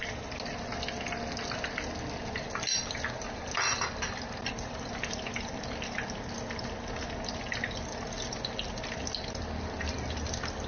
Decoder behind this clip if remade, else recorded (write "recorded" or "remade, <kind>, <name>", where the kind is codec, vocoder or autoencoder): recorded